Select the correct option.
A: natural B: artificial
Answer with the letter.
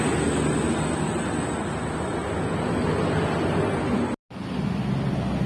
A